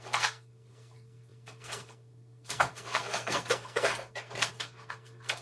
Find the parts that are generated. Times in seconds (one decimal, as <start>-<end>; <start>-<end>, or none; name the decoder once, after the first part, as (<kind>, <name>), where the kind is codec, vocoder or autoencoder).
0.0-5.4 (codec, SNAC)